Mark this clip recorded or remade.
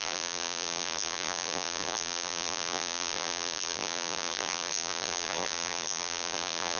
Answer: remade